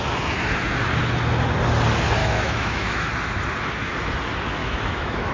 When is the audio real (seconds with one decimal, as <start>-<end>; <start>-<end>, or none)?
0.0-2.2; 3.1-4.6